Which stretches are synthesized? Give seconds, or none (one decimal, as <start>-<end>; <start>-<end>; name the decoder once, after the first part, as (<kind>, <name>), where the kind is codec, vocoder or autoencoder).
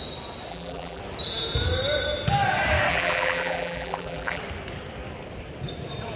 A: 0.5-1.0 (vocoder, BigVGAN v2); 2.9-4.4